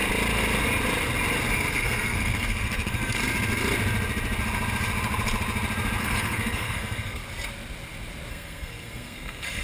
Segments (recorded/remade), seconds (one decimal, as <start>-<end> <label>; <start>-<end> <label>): 0.0-1.7 recorded; 1.7-3.2 remade; 3.2-6.0 recorded; 6.0-7.2 remade; 7.2-8.3 recorded; 8.3-9.6 remade